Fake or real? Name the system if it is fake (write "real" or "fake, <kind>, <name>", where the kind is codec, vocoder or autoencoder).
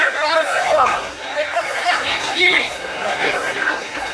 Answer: fake, codec, SNAC